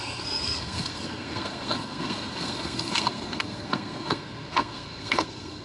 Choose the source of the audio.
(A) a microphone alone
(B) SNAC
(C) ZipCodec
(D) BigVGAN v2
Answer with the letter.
B